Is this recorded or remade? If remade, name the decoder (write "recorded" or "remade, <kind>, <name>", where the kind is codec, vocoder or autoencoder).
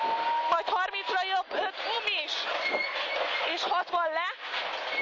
recorded